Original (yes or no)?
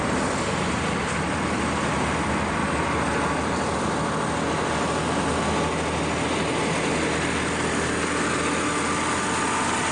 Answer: yes